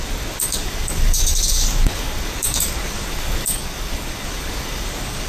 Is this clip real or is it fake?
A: fake